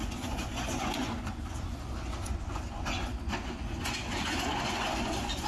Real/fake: fake